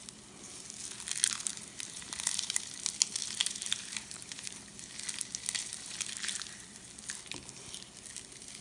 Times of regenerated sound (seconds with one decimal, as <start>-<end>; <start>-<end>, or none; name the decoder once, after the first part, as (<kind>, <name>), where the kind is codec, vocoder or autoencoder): 1.5-2.7 (vocoder, BigVGAN v2); 3.2-4.6